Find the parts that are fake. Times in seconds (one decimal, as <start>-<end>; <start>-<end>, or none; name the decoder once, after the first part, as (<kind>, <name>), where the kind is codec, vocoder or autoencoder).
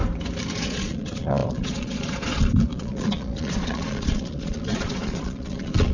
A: 0.6-5.9 (vocoder, Vocos)